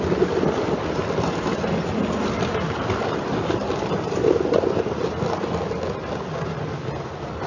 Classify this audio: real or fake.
real